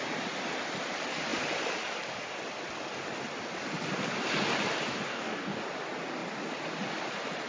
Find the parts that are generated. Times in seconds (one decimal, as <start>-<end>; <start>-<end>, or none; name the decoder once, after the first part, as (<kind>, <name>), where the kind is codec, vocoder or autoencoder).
5.1-5.6 (codec, DAC)